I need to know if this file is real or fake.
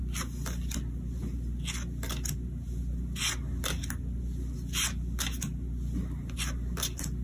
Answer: real